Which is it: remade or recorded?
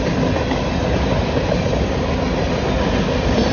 recorded